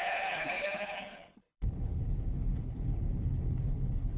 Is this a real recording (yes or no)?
no